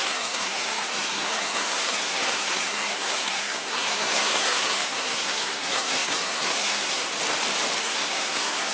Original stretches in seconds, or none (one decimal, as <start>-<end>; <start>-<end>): 7.1-7.8